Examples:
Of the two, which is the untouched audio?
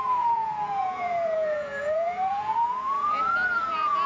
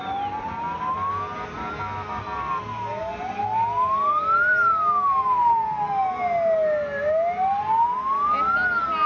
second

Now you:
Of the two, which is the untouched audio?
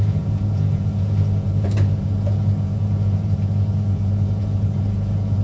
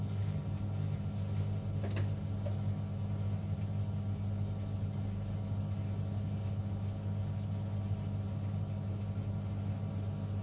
second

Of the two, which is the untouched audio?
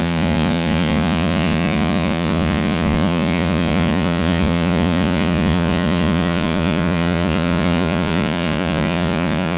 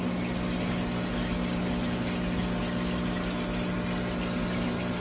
second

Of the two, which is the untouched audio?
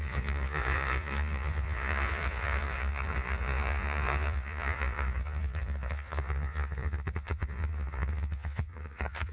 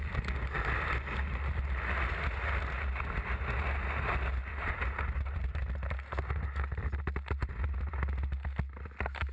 second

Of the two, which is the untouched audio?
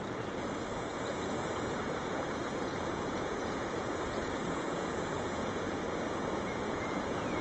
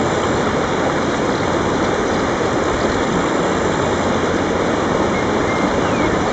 second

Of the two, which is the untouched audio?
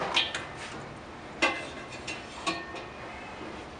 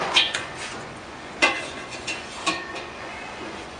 first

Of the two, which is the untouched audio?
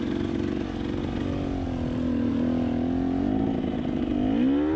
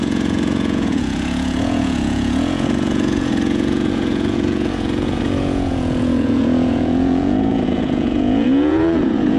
first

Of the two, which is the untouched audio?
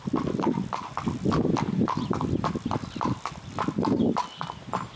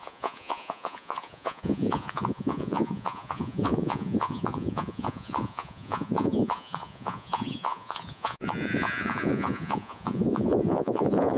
first